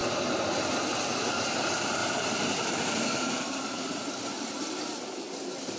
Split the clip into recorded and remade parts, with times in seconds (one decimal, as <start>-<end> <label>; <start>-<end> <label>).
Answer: 0.0-2.0 recorded; 2.0-4.8 remade; 4.8-5.8 recorded

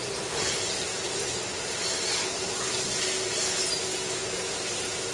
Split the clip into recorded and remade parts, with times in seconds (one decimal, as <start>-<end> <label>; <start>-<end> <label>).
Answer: 0.0-0.9 recorded; 0.9-1.6 remade; 1.6-3.9 recorded; 3.9-4.5 remade; 4.5-5.1 recorded

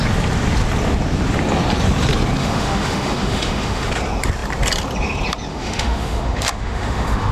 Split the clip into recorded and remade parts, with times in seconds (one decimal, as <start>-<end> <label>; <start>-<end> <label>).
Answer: 0.0-2.4 recorded; 2.4-3.9 remade; 3.9-5.5 recorded; 5.5-7.3 remade

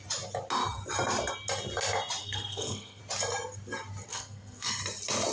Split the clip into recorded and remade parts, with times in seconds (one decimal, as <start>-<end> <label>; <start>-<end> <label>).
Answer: 0.0-2.2 recorded; 2.2-3.0 remade; 3.0-4.1 recorded; 4.1-4.7 remade; 4.7-5.3 recorded

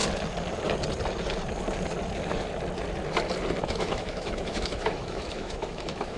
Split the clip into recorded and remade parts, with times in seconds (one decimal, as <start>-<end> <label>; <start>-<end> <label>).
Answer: 0.0-3.6 recorded; 3.6-6.2 remade

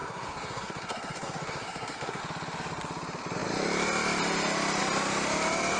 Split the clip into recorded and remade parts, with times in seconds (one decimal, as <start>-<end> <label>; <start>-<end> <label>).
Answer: 0.0-2.2 remade; 2.2-5.8 recorded

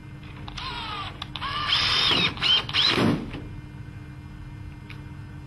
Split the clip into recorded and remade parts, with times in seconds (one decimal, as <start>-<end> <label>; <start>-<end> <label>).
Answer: 0.0-1.7 recorded; 1.7-3.2 remade; 3.2-5.5 recorded

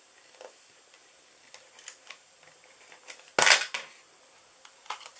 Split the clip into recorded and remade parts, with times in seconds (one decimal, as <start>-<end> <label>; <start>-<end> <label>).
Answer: 0.0-5.2 recorded